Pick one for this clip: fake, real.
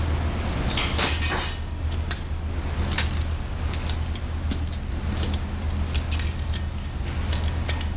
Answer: real